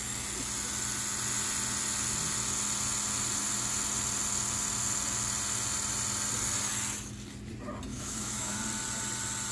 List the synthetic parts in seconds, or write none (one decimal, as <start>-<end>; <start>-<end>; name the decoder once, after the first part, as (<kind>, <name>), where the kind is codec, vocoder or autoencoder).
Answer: 7.9-8.6 (autoencoder, DAC-VAE)